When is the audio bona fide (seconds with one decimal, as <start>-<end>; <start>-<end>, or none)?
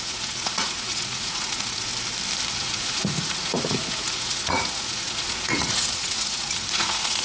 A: 1.9-2.5